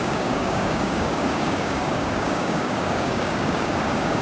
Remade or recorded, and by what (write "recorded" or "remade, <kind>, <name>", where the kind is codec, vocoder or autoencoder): remade, codec, DAC